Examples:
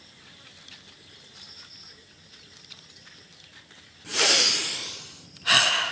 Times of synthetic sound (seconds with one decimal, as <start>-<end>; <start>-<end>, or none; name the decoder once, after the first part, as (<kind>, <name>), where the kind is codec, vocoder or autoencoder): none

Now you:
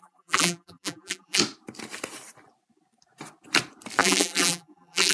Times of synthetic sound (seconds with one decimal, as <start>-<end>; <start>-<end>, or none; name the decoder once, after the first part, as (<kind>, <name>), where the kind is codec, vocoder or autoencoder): 0.0-1.4 (vocoder, BigVGAN v2); 4.0-5.1

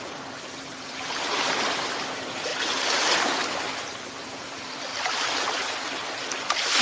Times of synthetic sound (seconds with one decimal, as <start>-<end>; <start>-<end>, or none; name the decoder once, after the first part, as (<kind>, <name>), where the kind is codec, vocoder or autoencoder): 0.0-2.5 (vocoder, BigVGAN v2); 4.2-4.9; 6.3-6.8